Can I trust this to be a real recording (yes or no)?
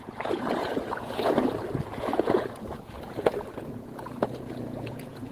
no